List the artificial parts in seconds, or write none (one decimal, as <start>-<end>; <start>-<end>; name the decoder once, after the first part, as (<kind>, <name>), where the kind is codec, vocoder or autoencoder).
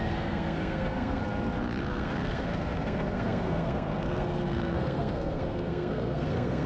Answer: 0.0-1.2 (codec, SNAC); 1.8-6.7